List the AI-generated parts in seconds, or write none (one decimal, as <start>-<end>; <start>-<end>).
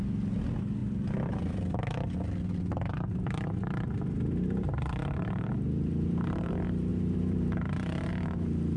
2.9-6.5; 6.9-8.1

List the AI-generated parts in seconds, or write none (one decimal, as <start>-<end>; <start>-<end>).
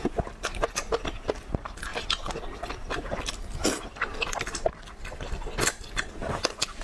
none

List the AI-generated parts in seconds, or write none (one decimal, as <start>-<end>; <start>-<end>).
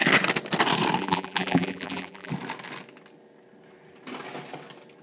1.0-2.3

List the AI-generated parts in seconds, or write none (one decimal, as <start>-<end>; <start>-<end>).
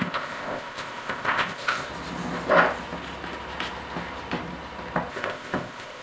0.0-1.9; 5.1-6.0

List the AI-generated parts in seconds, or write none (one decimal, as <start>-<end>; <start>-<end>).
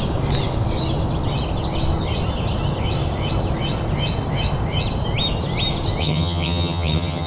6.0-7.3